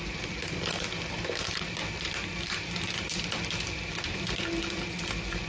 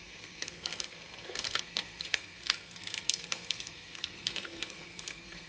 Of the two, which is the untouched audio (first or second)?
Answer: first